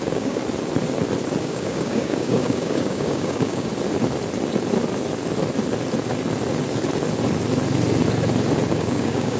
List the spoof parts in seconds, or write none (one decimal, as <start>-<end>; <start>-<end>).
0.0-0.4; 1.4-3.7; 8.7-9.4